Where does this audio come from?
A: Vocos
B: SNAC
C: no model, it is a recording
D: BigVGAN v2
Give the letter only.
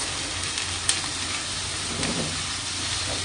C